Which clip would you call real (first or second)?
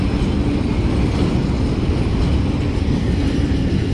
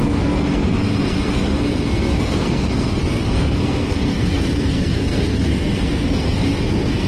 first